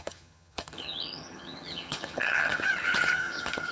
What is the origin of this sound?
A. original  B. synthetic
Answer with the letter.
B